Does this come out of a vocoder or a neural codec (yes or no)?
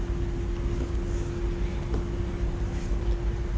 no